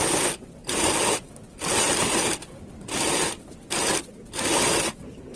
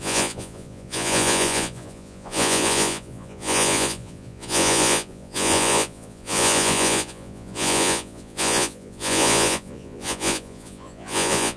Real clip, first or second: first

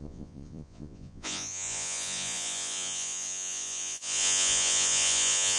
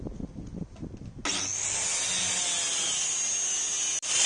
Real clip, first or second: second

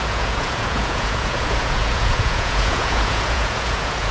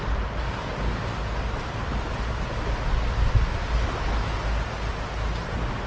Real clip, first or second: second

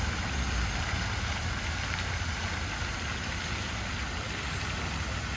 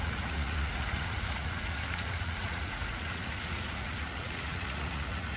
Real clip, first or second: first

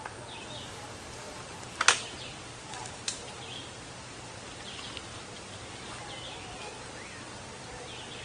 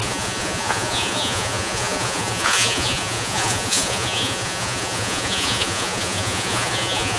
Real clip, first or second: first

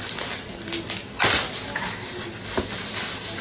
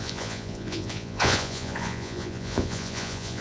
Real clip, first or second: first